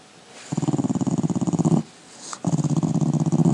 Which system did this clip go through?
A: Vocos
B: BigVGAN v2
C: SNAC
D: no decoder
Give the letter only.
D